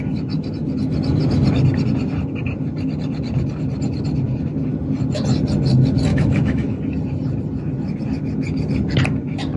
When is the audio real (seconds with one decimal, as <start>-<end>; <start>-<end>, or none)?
0.0-6.1; 6.8-9.6